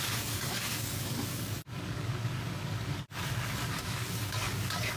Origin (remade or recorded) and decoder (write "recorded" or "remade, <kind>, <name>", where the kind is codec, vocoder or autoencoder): remade, codec, DAC